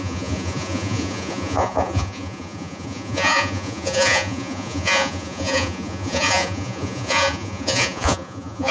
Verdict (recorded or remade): remade